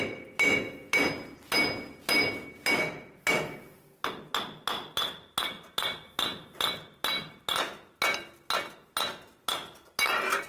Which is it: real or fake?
real